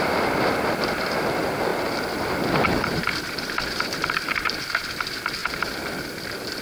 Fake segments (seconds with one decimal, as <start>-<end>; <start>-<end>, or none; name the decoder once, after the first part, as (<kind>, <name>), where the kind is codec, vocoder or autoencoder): 0.0-1.7 (vocoder, BigVGAN v2); 2.8-5.4; 6.0-6.6